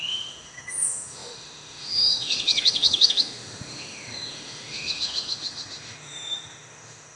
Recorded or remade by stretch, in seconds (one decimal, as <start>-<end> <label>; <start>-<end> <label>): 0.0-7.2 remade